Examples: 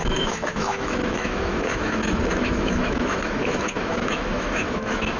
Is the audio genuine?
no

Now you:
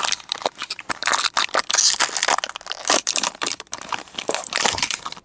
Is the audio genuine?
yes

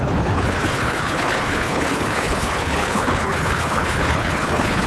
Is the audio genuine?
no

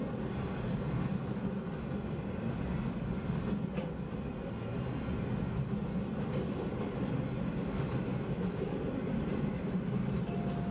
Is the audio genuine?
yes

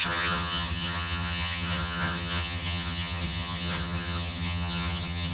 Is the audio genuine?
no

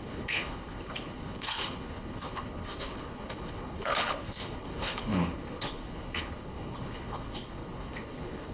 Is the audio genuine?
no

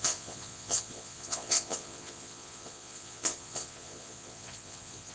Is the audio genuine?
no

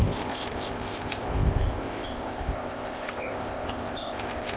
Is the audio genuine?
no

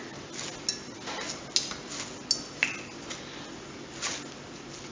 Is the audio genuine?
yes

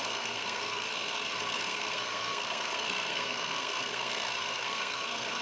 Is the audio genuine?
no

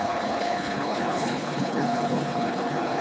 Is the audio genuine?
no